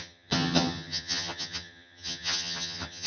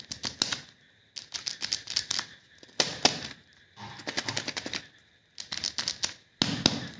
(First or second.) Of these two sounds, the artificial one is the first